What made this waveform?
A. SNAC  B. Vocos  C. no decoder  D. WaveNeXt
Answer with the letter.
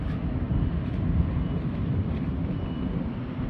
C